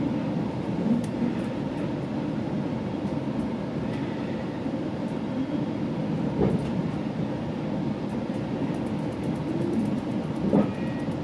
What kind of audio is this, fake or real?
real